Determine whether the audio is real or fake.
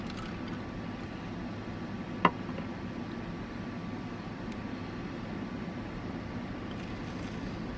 real